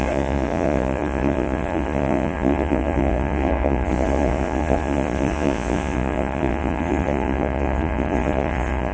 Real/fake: fake